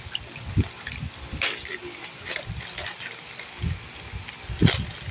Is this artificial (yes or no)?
no